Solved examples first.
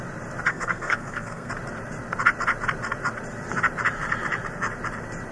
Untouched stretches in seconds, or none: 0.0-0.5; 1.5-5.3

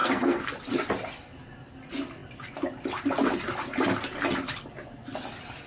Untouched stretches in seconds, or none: 0.5-5.7

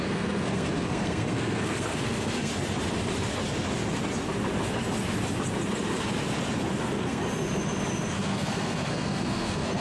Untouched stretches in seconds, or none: 2.5-6.8; 7.2-8.1

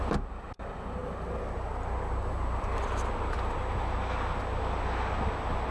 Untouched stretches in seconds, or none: 0.0-5.7

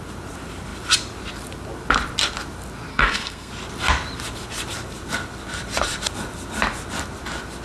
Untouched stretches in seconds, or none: 0.0-2.9; 3.5-7.6

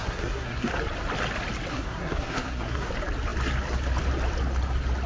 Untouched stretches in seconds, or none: 0.7-1.7; 2.9-5.1

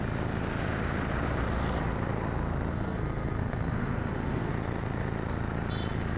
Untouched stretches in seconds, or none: 0.0-2.7; 4.5-6.2